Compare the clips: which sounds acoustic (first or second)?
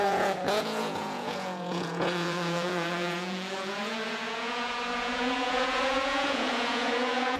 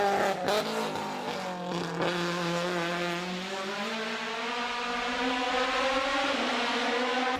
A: second